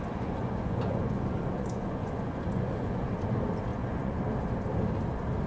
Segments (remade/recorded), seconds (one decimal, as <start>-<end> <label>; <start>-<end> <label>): 0.0-3.1 remade; 3.1-3.7 recorded; 3.7-4.2 remade; 4.2-5.5 recorded